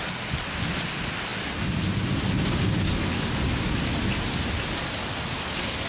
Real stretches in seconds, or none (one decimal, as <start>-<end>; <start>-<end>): 0.0-5.9